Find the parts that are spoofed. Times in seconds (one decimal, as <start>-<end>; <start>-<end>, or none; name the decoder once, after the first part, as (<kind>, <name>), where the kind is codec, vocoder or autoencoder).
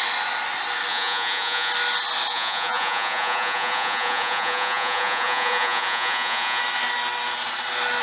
0.9-1.7 (vocoder, Vocos); 2.3-6.6